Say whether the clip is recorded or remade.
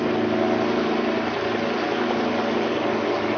recorded